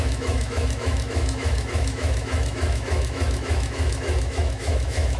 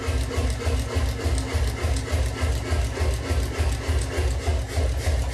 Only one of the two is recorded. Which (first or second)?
second